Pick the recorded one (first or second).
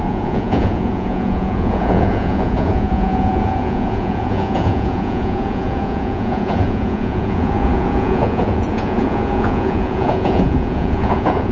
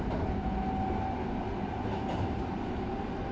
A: second